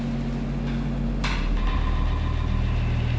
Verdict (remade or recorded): recorded